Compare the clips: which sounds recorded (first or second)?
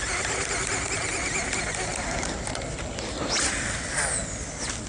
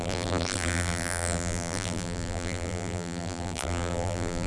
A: first